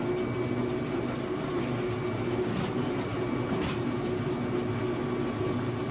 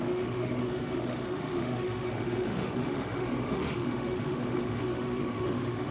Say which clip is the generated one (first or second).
second